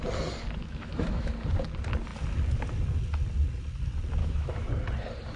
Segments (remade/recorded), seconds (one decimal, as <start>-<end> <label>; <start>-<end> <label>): 0.0-0.6 recorded; 0.6-1.3 remade; 1.3-4.2 recorded; 4.2-4.7 remade; 4.7-5.4 recorded